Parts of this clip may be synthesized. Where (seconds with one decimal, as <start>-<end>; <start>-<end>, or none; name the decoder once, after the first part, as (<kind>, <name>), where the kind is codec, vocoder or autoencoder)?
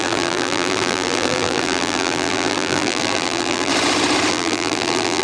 0.0-3.7 (vocoder, BigVGAN v2); 4.3-5.2